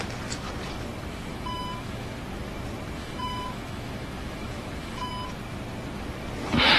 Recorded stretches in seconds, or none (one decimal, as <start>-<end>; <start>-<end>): 0.0-1.3; 2.2-3.0; 5.1-6.8